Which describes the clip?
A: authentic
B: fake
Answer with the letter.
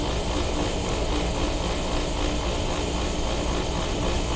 A